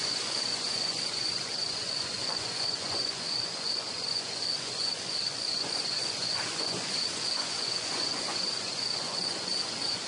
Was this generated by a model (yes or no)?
yes